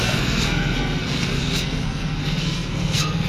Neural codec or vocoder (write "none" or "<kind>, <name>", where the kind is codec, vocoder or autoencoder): codec, SNAC